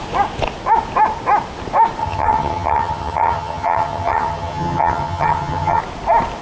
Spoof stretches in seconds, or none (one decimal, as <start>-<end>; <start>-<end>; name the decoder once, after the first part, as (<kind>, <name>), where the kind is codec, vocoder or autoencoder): 2.0-5.8 (vocoder, HiFi-GAN)